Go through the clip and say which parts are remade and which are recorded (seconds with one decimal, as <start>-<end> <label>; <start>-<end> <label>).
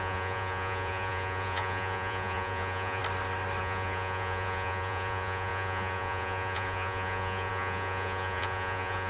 0.0-3.0 remade; 3.0-3.6 recorded; 3.6-9.1 remade